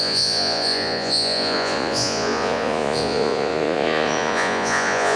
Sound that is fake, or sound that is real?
fake